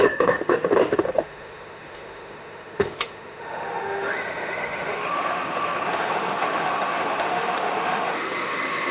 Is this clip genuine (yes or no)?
no